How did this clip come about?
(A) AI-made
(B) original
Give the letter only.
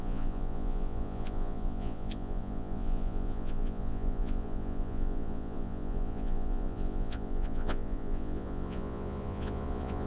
A